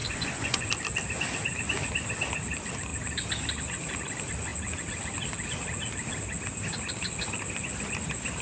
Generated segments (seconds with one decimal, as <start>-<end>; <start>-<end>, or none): 0.0-0.7